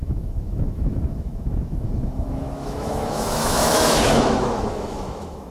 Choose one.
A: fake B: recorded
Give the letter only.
A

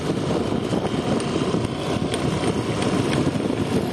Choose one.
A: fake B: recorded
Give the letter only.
B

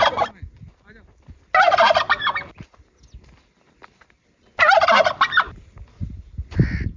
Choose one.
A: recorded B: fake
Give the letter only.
A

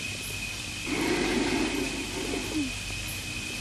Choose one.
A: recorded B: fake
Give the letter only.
A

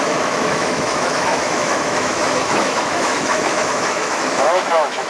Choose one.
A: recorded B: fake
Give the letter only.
B